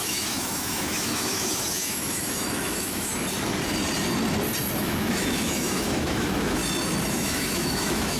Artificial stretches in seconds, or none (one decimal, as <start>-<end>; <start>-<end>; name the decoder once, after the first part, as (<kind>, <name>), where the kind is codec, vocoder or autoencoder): 0.0-3.1 (autoencoder, DAC-VAE); 4.8-6.6; 7.1-8.2

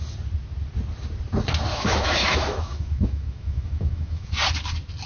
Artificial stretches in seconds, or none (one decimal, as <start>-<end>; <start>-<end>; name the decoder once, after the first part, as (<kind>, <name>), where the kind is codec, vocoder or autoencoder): 1.7-4.3 (autoencoder, DAC-VAE)

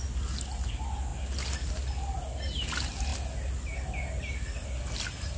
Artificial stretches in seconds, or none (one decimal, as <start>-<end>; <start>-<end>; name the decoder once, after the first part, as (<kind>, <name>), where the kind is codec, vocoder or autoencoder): none